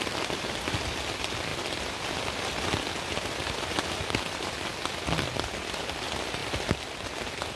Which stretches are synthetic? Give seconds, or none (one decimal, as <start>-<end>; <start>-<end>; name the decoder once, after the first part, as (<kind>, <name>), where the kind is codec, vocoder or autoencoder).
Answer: 3.4-4.0 (vocoder, BigVGAN v2)